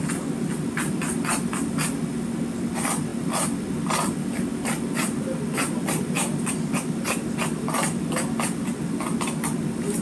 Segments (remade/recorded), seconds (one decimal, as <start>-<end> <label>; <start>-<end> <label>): 0.0-10.0 recorded